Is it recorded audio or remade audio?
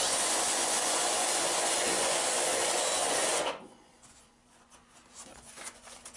remade